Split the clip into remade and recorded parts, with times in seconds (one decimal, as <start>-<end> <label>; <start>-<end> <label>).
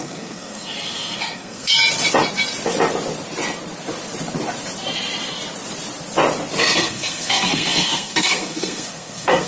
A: 0.0-1.7 remade; 1.7-6.6 recorded; 6.6-9.5 remade